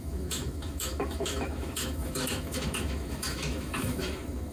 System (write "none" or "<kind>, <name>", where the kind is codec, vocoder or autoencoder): autoencoder, DAC-VAE